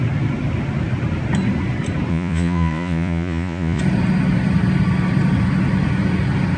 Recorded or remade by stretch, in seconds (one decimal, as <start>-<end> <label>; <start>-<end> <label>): 0.0-2.1 recorded; 2.1-3.8 remade; 3.8-6.6 recorded